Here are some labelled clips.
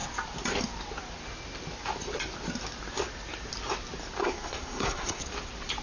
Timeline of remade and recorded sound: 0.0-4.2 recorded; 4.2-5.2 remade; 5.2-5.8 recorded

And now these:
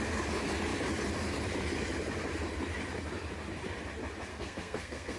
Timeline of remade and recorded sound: 0.0-4.3 recorded; 4.3-5.2 remade

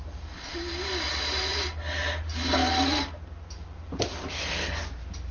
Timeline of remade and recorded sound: 0.0-5.3 recorded

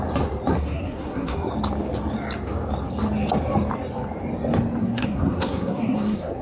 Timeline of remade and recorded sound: 0.0-0.5 recorded; 0.5-1.5 remade; 1.5-4.8 recorded; 4.8-6.4 remade

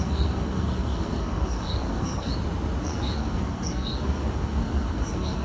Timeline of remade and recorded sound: 0.0-2.3 remade; 2.3-2.8 recorded; 2.8-5.4 remade

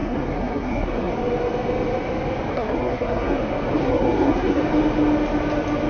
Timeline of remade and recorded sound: 0.0-1.1 remade; 1.1-2.5 recorded; 2.5-3.4 remade; 3.4-3.8 recorded; 3.8-4.6 remade; 4.6-5.9 recorded

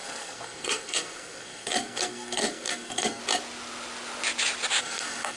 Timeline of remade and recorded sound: 0.0-3.2 remade; 3.2-4.8 recorded; 4.8-5.4 remade